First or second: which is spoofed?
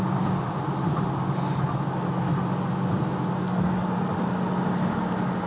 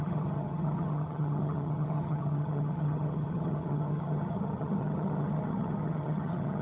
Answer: second